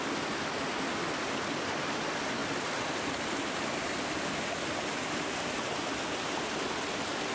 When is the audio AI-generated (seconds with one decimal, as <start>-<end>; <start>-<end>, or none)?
2.4-3.8